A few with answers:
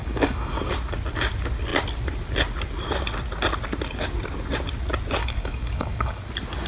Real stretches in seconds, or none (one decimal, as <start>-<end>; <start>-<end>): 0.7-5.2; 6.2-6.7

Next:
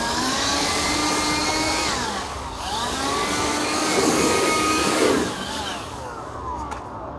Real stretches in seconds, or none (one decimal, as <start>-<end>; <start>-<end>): 1.0-1.5

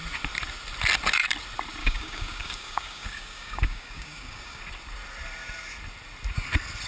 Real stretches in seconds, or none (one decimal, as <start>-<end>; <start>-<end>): 0.0-1.8; 4.6-6.9